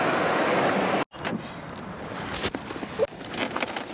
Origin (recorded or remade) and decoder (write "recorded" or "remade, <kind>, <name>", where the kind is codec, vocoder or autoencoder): recorded